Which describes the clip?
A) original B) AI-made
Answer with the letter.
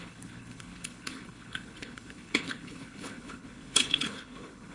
B